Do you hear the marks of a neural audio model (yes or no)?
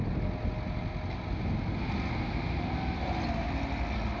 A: no